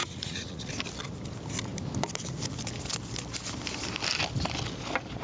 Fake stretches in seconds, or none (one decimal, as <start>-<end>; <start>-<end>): 0.0-0.7